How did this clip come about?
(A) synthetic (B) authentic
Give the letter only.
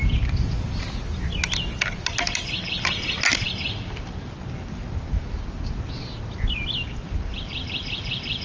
B